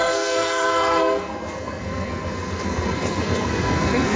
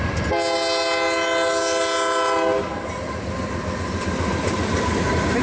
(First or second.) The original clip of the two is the second